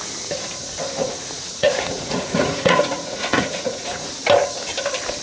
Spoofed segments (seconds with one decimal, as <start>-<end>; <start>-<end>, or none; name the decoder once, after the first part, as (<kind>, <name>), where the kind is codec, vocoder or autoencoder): 1.0-4.1 (vocoder, Vocos)